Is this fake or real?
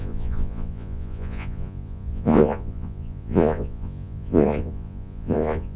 fake